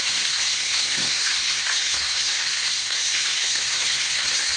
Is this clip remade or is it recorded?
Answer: remade